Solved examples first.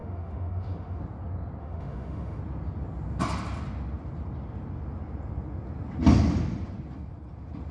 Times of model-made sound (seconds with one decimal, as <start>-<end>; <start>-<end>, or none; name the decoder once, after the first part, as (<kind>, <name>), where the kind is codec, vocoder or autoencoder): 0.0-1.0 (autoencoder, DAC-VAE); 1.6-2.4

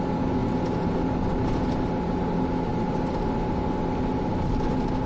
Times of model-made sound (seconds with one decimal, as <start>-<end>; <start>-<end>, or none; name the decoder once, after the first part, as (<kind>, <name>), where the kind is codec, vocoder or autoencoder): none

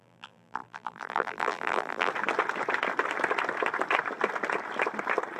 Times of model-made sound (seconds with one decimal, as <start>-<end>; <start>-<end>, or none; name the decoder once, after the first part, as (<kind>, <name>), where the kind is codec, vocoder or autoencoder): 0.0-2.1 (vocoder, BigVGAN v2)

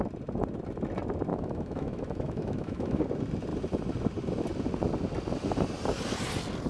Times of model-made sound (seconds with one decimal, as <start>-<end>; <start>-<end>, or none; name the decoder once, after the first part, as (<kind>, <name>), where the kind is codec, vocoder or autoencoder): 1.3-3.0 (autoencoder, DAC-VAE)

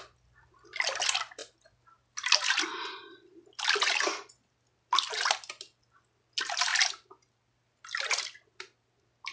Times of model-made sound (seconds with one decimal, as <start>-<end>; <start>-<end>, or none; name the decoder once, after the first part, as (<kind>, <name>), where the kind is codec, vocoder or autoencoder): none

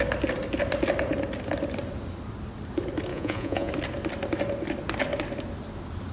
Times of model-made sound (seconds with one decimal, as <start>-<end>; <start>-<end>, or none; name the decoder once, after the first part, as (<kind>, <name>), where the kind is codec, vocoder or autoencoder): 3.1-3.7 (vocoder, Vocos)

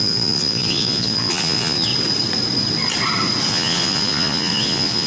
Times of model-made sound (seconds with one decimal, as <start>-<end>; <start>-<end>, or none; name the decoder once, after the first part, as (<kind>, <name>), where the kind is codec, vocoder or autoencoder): 0.0-1.9 (vocoder, Vocos); 3.5-5.1

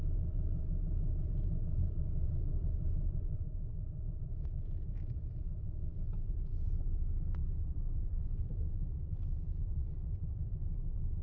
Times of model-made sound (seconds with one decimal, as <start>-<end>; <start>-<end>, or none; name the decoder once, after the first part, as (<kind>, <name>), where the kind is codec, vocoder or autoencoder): 0.0-11.2 (vocoder, BigVGAN v2)